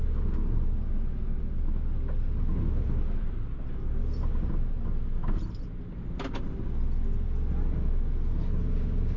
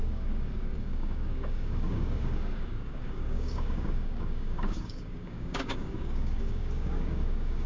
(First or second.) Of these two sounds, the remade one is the second